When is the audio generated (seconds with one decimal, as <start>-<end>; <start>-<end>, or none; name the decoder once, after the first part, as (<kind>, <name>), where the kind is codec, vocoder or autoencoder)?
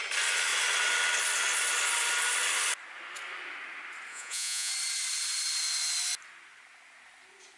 4.1-4.7 (vocoder, Vocos)